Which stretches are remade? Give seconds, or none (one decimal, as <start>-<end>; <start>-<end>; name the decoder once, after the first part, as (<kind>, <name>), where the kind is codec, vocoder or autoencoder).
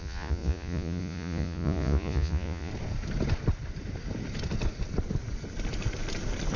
0.0-2.7 (vocoder, Vocos)